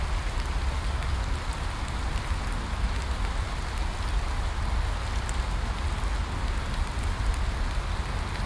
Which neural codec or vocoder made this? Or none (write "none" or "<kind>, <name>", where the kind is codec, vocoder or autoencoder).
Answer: none